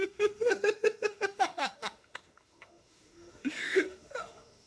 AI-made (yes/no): yes